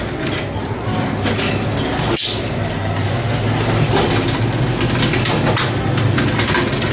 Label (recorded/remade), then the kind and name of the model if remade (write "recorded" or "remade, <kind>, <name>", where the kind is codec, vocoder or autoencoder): recorded